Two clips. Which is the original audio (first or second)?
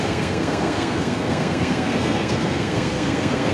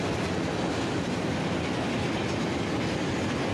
second